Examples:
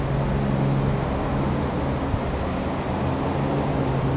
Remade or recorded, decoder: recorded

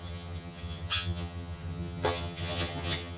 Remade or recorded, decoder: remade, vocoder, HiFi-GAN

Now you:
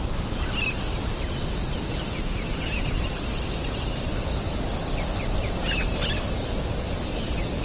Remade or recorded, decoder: recorded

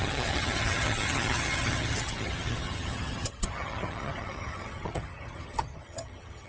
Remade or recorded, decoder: remade, vocoder, HiFi-GAN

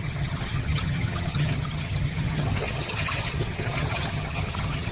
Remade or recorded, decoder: remade, vocoder, HiFi-GAN